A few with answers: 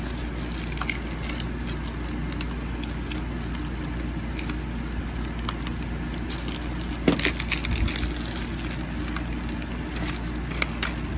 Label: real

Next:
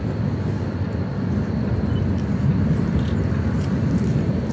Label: real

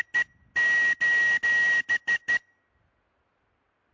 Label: real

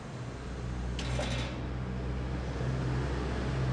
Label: real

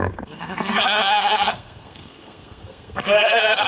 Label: fake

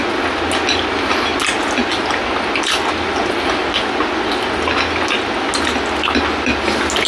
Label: real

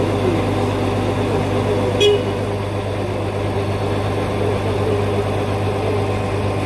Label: real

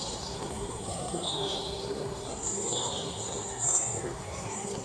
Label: fake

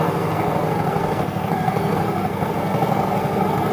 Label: fake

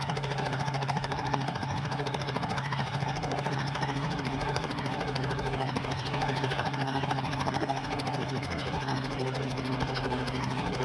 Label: fake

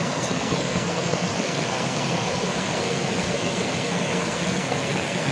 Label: fake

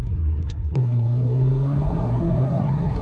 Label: fake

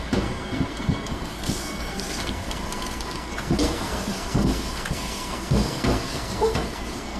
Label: fake